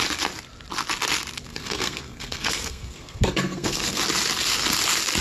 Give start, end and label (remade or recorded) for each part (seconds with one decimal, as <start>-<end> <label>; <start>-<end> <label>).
0.0-1.5 recorded; 1.5-4.0 remade; 4.0-5.2 recorded